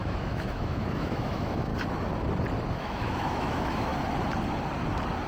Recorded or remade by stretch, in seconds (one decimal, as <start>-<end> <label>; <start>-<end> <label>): 0.0-1.7 remade; 1.7-2.8 recorded; 2.8-3.9 remade; 3.9-5.3 recorded